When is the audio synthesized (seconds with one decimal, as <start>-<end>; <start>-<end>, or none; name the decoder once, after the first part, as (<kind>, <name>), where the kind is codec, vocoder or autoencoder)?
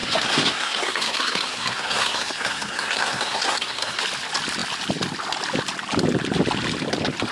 0.0-4.0 (codec, SNAC)